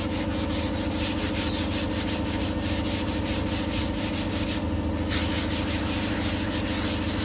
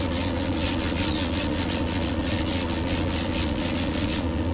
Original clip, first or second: first